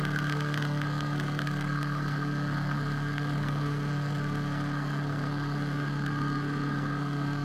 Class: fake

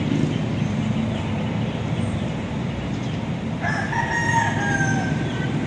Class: real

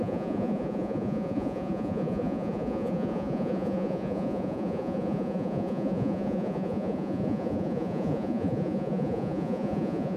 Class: fake